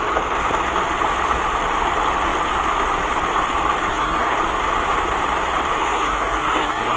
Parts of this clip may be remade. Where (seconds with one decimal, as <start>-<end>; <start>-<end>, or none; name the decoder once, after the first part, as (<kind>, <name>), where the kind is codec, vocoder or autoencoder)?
3.9-4.4 (codec, SNAC); 5.8-7.0